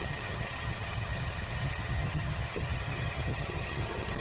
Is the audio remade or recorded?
remade